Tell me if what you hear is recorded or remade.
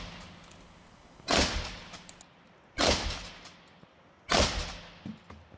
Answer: recorded